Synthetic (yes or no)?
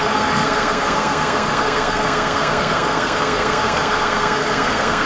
yes